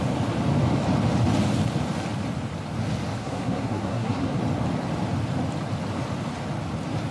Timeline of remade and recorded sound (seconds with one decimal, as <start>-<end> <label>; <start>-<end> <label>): 0.0-3.2 recorded; 3.2-4.4 remade; 4.4-7.1 recorded